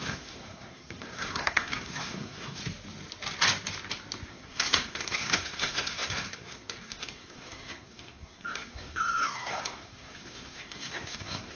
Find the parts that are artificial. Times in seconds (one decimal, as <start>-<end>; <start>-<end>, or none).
0.0-2.6; 4.3-11.6